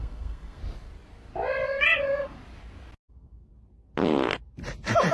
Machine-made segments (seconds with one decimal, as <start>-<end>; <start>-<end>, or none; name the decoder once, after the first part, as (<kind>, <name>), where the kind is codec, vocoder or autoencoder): 0.0-0.6 (codec, SNAC); 3.1-3.5